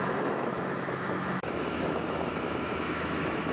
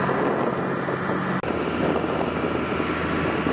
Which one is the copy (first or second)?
first